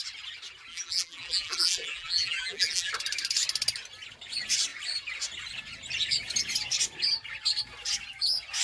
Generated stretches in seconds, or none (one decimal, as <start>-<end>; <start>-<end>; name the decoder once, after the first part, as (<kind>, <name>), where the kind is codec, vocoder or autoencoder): 0.7-2.9 (vocoder, BigVGAN v2)